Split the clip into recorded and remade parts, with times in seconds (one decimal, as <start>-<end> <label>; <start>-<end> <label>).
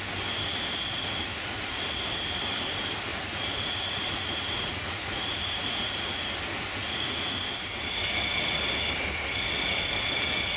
0.0-1.3 recorded; 1.3-2.0 remade; 2.0-3.1 recorded; 3.1-6.3 remade; 6.3-6.8 recorded; 6.8-7.4 remade; 7.4-10.6 recorded